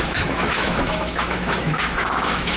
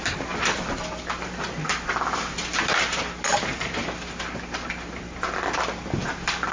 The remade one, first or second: first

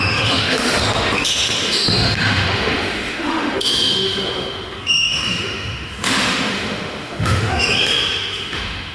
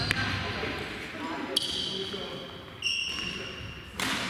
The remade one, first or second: first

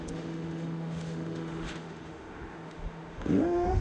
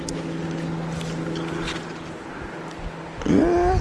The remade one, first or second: first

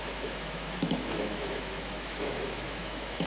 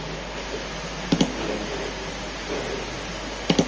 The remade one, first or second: first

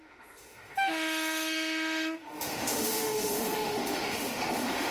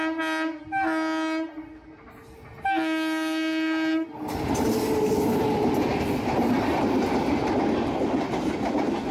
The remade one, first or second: first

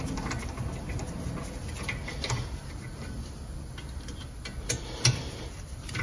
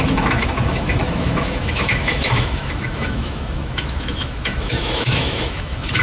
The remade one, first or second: second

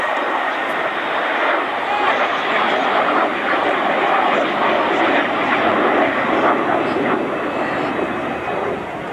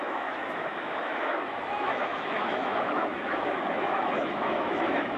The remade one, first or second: second